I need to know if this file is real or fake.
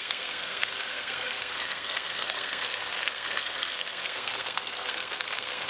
fake